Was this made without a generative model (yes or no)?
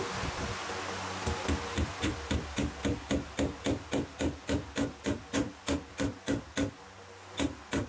yes